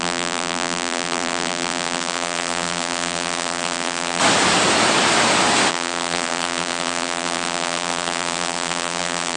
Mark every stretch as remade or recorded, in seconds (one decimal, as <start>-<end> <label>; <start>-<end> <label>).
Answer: 0.0-4.2 remade; 4.2-5.7 recorded; 5.7-9.4 remade